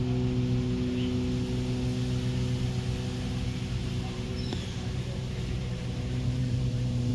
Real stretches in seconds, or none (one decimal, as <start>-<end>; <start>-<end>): 0.0-3.8